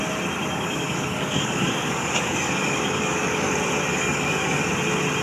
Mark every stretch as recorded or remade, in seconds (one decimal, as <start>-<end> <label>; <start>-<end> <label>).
0.0-0.4 recorded; 0.4-3.5 remade; 3.5-3.9 recorded; 3.9-4.7 remade; 4.7-5.2 recorded